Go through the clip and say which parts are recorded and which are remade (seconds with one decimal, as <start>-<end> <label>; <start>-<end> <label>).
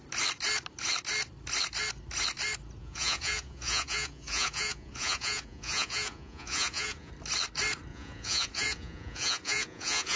0.0-2.8 recorded; 2.8-7.1 remade; 7.1-7.9 recorded; 7.9-10.2 remade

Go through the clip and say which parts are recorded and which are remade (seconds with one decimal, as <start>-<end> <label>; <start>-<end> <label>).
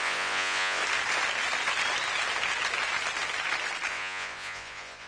0.0-0.8 remade; 0.8-3.9 recorded; 3.9-5.1 remade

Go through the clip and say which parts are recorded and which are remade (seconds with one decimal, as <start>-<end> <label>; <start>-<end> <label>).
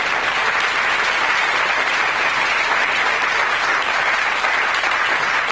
0.0-5.5 recorded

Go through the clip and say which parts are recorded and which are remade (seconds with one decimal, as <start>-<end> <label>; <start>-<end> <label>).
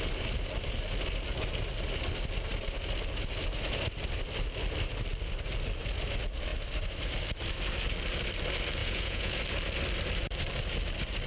0.0-8.8 recorded; 8.8-9.4 remade; 9.4-11.3 recorded